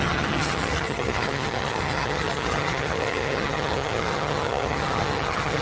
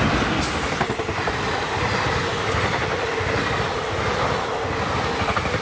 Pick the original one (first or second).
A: second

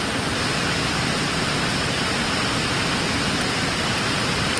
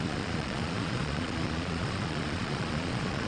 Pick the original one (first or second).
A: first